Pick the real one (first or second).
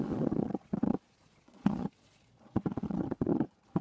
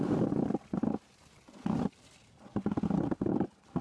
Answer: second